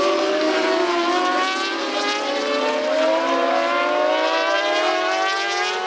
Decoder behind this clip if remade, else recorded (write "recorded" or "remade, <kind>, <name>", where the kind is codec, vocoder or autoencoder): recorded